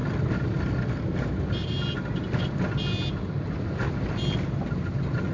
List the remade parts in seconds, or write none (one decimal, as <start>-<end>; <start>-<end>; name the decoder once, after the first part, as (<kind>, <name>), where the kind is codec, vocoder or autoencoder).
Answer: none